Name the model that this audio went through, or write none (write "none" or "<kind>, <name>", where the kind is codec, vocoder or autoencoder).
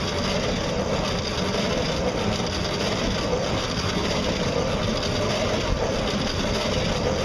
none